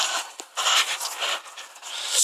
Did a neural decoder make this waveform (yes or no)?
no